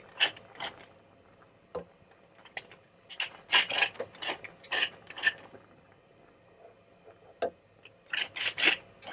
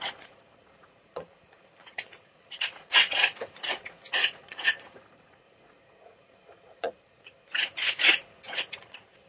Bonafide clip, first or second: first